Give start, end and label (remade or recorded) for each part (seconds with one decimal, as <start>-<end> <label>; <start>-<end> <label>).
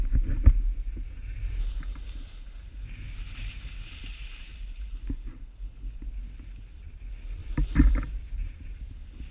0.0-4.1 recorded; 4.1-4.9 remade; 4.9-7.4 recorded; 7.4-8.5 remade; 8.5-9.3 recorded